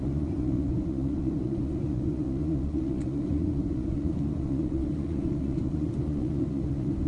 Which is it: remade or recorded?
remade